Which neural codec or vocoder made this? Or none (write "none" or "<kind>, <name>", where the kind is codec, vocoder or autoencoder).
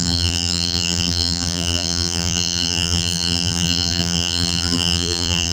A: vocoder, BigVGAN v2